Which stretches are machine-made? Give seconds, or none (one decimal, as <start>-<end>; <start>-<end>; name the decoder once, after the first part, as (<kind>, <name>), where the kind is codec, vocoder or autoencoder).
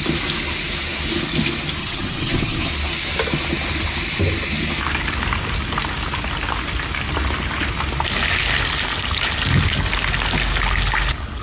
1.8-2.7 (vocoder, HiFi-GAN)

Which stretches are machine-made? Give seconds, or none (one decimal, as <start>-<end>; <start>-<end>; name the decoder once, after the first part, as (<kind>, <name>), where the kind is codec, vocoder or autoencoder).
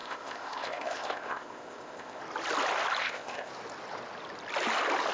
0.0-2.2 (codec, ZipCodec); 3.0-3.5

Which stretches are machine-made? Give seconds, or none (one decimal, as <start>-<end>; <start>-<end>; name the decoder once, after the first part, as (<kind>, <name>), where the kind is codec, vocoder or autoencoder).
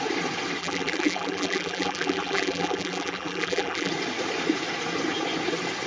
0.6-3.9 (vocoder, BigVGAN v2)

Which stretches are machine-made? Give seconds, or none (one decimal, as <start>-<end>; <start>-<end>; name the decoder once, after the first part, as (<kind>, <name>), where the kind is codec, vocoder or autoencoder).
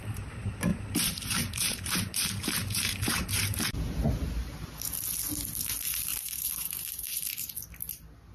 0.7-3.9 (vocoder, BigVGAN v2); 6.1-7.5